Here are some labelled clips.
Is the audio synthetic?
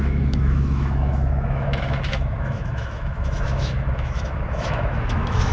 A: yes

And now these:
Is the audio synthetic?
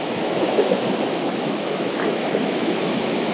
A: yes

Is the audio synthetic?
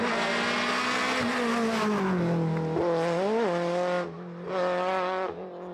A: no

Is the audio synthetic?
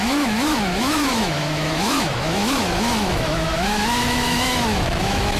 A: yes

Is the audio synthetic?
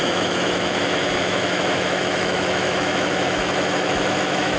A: yes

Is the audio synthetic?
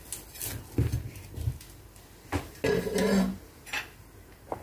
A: no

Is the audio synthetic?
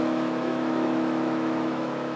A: yes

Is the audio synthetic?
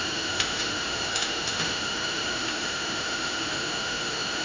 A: yes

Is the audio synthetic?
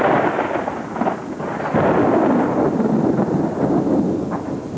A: no